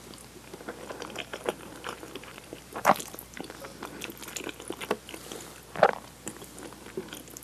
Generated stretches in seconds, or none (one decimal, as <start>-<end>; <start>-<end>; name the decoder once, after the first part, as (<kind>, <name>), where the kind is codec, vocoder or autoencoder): 1.3-3.4 (vocoder, BigVGAN v2)